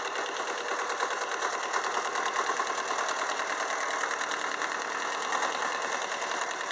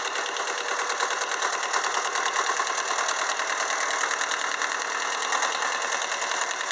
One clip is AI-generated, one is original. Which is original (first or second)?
second